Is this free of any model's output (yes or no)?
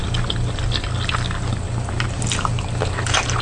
yes